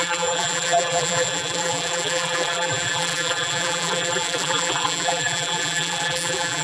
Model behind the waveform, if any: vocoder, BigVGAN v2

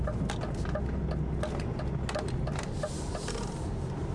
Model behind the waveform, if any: none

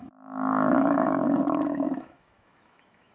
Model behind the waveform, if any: autoencoder, DAC-VAE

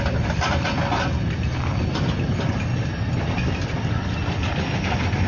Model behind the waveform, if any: none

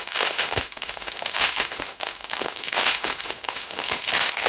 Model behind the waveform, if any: autoencoder, DAC-VAE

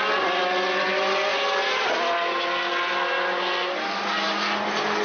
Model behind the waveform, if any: none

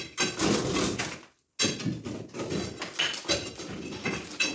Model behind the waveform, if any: none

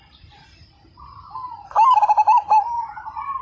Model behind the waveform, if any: vocoder, BigVGAN v2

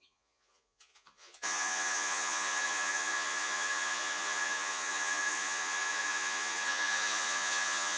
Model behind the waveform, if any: vocoder, Vocos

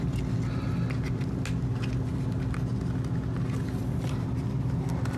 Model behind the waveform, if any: none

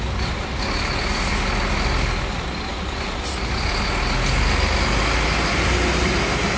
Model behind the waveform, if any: none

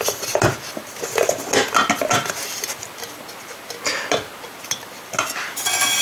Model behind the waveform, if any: none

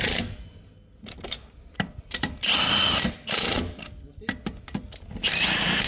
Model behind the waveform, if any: none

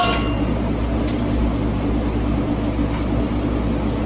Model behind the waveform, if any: none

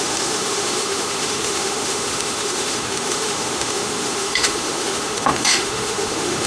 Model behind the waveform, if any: autoencoder, DAC-VAE